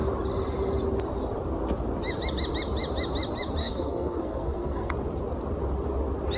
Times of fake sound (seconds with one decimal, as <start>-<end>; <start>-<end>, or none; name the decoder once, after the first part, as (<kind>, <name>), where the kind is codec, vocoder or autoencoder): 3.6-4.9 (codec, SNAC)